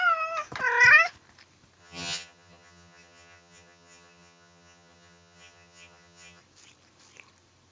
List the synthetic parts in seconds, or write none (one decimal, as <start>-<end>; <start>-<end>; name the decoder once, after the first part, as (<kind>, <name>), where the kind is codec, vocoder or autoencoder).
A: 1.8-6.4 (vocoder, HiFi-GAN)